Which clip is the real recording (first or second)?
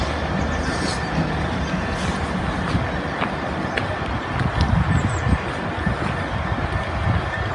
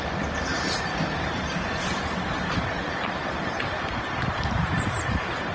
first